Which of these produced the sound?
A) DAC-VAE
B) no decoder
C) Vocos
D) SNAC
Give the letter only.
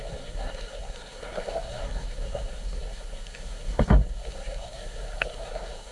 D